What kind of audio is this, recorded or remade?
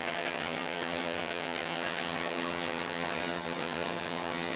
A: remade